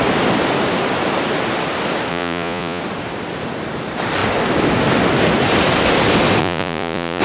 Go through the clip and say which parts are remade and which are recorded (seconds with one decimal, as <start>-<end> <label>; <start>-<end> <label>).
0.0-2.1 recorded; 2.1-2.8 remade; 2.8-6.4 recorded; 6.4-7.2 remade